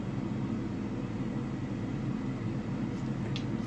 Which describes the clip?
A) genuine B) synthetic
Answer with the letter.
A